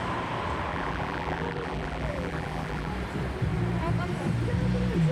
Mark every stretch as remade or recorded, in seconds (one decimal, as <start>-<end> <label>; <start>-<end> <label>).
0.0-0.7 recorded; 0.7-2.9 remade; 2.9-5.1 recorded